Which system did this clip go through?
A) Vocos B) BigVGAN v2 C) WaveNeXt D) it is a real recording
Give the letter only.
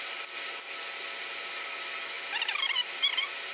D